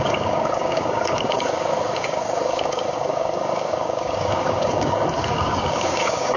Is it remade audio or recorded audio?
remade